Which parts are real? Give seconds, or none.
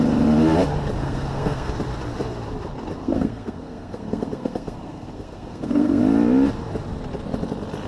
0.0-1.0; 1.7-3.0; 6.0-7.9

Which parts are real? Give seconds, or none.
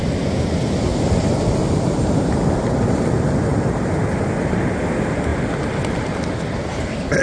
0.0-7.2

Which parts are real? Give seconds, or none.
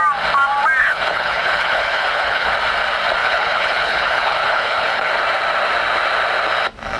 0.0-0.8; 2.5-3.2; 5.1-7.0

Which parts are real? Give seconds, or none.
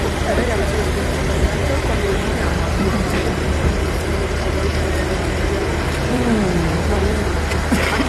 0.0-1.6; 4.2-4.7; 7.5-8.1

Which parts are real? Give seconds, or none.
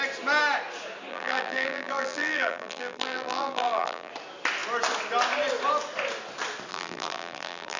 0.0-1.1; 4.1-6.7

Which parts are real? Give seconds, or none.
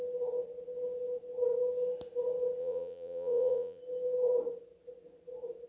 0.0-2.6; 3.8-5.7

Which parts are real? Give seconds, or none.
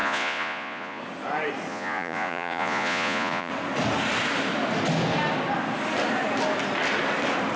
1.0-1.7; 3.5-7.6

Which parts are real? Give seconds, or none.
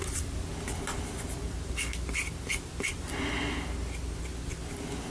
0.0-5.1